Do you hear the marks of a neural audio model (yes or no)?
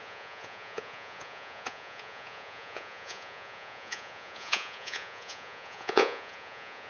yes